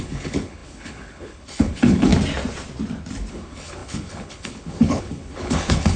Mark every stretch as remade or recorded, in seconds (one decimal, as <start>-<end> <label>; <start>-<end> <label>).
0.0-2.1 remade; 2.1-3.3 recorded; 3.3-6.0 remade